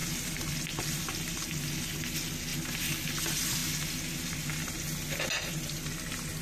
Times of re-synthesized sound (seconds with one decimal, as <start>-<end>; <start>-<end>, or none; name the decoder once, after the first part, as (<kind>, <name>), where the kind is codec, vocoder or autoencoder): none